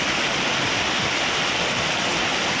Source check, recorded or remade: recorded